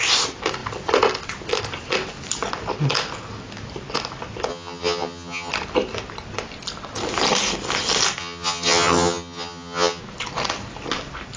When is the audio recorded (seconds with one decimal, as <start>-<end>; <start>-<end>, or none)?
0.0-4.5; 5.5-8.2; 10.0-11.4